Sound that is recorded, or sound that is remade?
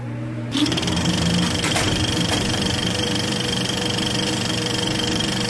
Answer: remade